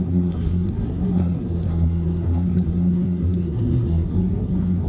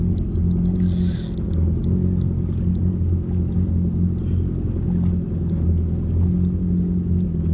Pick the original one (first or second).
second